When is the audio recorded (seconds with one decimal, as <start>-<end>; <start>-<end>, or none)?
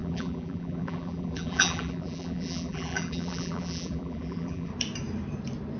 4.7-5.8